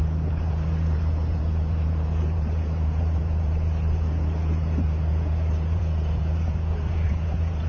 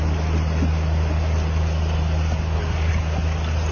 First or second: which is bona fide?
second